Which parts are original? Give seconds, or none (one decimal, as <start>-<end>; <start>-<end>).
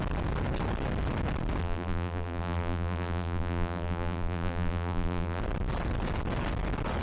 0.0-1.6; 5.4-7.0